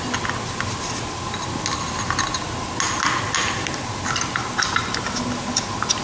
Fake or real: real